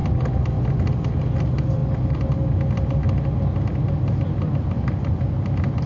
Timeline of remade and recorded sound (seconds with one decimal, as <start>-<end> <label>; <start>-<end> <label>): 0.0-5.9 recorded